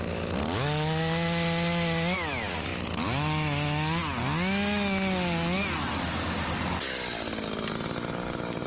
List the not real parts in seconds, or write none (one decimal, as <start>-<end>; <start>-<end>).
none